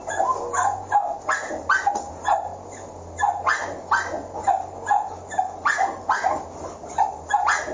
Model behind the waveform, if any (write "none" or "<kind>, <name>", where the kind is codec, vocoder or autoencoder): none